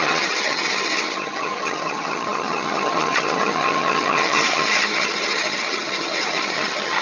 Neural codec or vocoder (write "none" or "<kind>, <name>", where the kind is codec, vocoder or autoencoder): vocoder, HiFi-GAN